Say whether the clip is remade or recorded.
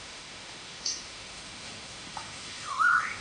remade